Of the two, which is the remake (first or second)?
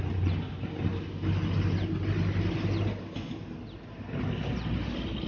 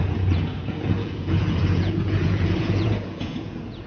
second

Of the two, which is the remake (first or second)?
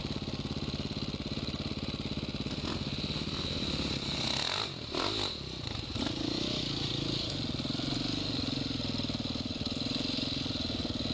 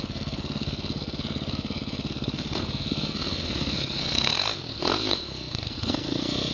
second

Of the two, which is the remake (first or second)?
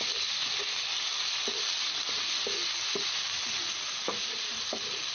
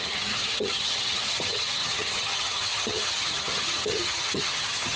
second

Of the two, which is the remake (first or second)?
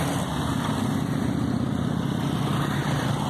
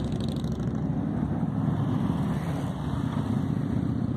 second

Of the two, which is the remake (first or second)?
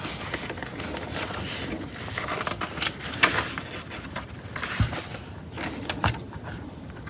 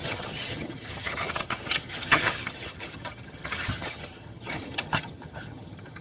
second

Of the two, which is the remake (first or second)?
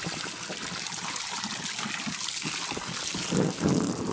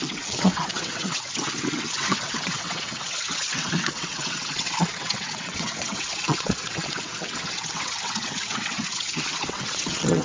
second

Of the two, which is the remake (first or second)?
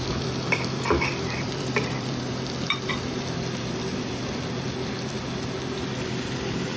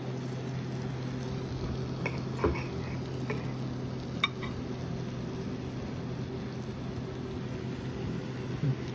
first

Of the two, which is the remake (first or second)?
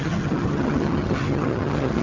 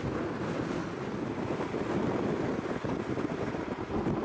first